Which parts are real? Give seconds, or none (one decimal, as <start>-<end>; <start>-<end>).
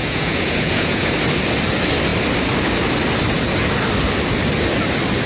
1.1-5.3